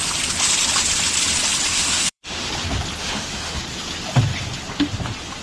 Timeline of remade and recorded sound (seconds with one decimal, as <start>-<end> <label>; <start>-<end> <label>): 0.0-1.7 recorded; 1.7-2.5 remade; 2.5-3.0 recorded; 3.0-3.6 remade; 3.6-5.4 recorded